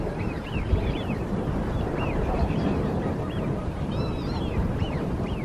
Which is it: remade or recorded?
remade